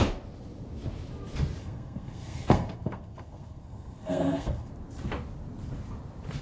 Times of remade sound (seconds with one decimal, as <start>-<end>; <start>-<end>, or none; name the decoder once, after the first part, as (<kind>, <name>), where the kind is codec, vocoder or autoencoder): 1.6-4.7 (codec, SNAC)

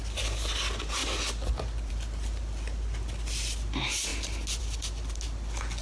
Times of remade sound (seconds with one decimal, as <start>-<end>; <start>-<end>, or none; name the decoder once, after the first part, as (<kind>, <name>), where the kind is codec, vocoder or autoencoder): none

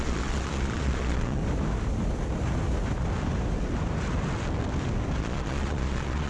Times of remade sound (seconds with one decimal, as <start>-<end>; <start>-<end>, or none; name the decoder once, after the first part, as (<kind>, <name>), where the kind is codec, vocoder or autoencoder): 0.0-1.4 (vocoder, Vocos); 5.2-6.3

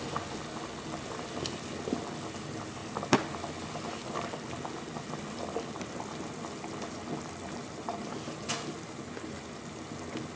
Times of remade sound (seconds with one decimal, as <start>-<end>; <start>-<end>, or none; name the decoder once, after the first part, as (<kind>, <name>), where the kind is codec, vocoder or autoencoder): 4.0-5.6 (vocoder, BigVGAN v2); 6.1-8.7

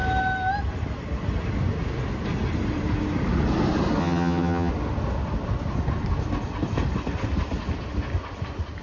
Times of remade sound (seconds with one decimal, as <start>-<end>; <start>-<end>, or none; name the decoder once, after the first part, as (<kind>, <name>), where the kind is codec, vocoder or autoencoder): 4.0-4.7 (vocoder, HiFi-GAN)

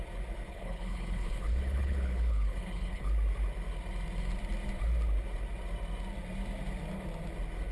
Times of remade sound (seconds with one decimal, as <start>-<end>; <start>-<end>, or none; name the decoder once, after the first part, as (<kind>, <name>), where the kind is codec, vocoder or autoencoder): 0.5-3.1 (codec, HILCodec)